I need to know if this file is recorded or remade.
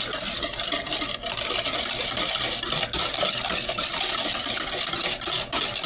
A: recorded